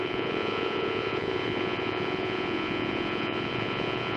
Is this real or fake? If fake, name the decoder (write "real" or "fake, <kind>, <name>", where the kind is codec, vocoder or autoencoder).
fake, vocoder, Vocos